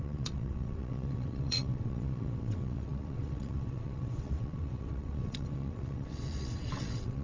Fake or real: fake